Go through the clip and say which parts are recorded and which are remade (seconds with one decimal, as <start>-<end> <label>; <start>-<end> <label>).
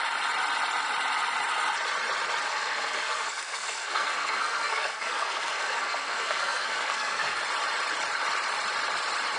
0.0-2.5 recorded; 2.5-7.4 remade; 7.4-9.4 recorded